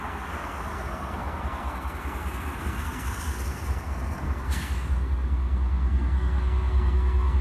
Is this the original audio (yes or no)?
no